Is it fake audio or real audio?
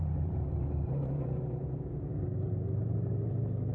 fake